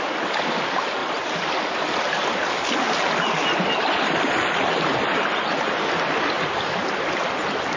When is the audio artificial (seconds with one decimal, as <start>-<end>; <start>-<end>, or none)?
none